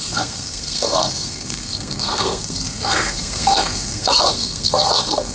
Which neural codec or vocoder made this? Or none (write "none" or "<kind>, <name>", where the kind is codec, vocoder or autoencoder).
codec, SNAC